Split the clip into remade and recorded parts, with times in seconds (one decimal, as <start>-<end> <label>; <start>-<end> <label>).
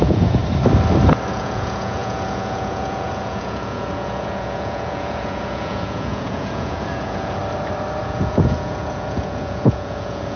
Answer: 0.0-0.4 remade; 0.4-1.3 recorded; 1.3-7.4 remade; 7.4-8.0 recorded; 8.0-10.4 remade